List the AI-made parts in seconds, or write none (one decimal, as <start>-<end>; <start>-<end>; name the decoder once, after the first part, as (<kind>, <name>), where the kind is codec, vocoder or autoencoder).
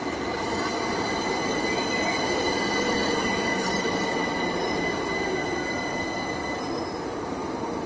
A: none